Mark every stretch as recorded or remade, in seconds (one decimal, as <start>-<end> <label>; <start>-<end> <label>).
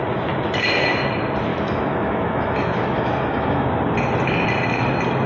0.0-1.5 recorded; 1.5-3.7 remade; 3.7-5.3 recorded